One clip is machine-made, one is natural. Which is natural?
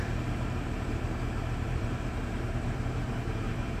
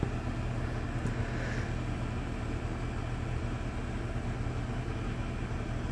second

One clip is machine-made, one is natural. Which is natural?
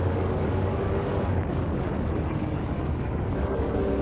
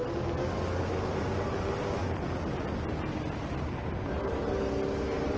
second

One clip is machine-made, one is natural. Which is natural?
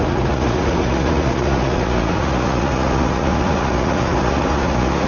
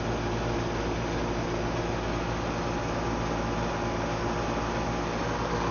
second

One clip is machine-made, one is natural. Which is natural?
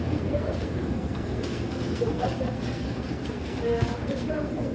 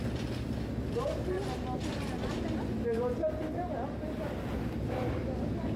second